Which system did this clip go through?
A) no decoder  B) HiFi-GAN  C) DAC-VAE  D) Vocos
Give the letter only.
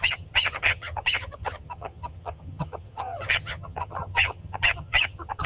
B